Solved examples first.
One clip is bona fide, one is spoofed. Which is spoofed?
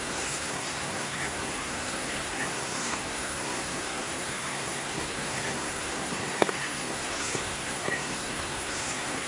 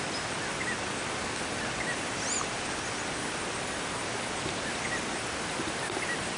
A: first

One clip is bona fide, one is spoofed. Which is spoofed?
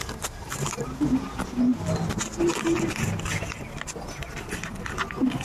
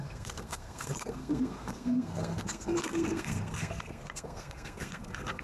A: second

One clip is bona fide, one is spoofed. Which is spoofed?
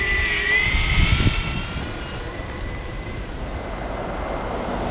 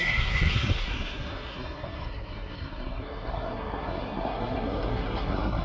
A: second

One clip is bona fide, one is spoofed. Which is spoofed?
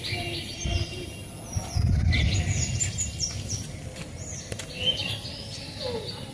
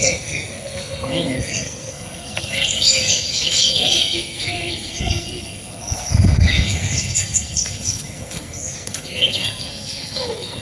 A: second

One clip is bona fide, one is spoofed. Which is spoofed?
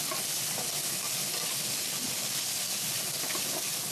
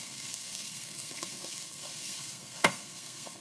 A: second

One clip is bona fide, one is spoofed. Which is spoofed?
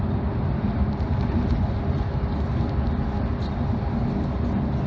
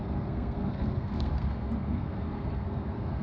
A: second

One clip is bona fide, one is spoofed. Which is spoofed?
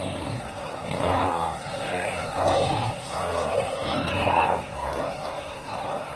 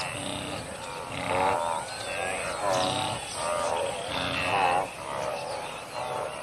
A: first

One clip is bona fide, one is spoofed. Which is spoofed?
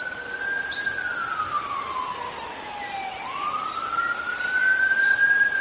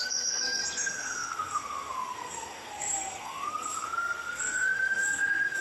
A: second